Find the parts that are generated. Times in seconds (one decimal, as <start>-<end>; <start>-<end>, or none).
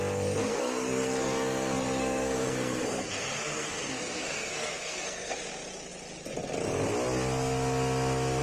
0.4-5.4